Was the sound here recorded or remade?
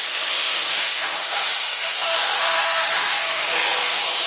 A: remade